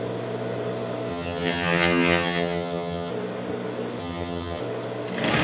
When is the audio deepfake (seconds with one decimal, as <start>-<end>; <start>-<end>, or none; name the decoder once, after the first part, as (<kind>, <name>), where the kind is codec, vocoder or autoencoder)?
1.1-3.1 (vocoder, HiFi-GAN); 4.0-4.6